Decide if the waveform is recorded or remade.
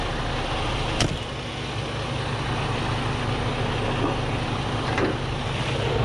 recorded